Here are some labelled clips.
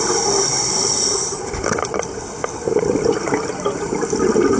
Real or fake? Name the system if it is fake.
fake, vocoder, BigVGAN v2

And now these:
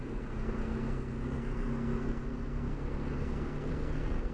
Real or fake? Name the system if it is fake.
fake, codec, SNAC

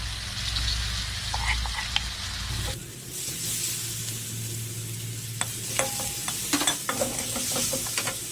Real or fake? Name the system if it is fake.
real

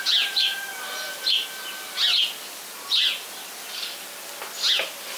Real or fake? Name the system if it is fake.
real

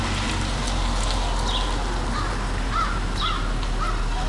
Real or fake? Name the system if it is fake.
real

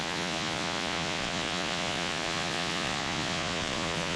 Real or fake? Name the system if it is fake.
fake, vocoder, Vocos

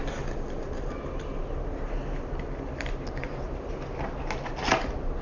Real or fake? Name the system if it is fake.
real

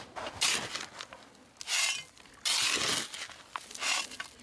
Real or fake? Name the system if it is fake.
real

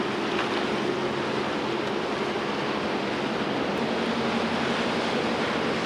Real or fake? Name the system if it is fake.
real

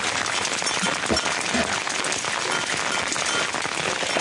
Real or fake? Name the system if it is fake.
real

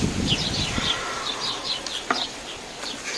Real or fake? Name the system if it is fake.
real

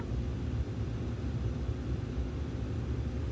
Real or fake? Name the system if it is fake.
real